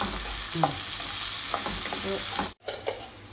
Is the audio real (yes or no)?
yes